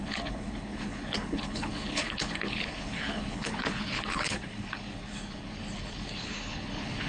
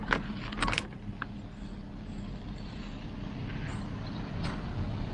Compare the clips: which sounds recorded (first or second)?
second